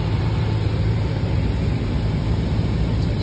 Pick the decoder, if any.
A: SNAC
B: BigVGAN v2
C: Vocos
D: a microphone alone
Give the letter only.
B